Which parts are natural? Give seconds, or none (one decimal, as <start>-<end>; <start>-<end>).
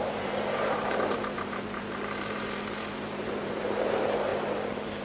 4.3-5.0